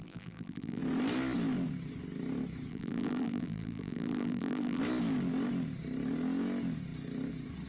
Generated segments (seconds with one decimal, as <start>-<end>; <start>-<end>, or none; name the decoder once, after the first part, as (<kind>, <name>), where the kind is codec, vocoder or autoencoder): 0.0-0.8 (vocoder, BigVGAN v2); 2.7-4.8